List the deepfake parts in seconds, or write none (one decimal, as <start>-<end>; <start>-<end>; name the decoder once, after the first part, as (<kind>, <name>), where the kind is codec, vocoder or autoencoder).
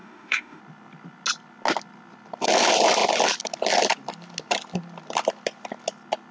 0.0-0.6 (autoencoder, DAC-VAE)